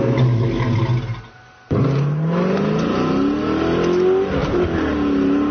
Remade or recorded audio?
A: recorded